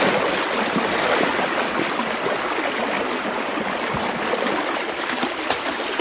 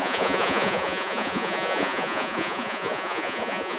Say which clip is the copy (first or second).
second